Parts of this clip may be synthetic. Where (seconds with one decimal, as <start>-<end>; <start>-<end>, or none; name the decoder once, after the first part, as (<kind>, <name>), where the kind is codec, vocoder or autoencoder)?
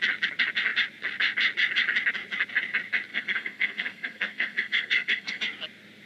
3.1-5.4 (codec, SNAC)